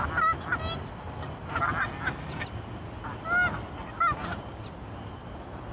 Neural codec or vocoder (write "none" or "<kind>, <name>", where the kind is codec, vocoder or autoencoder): none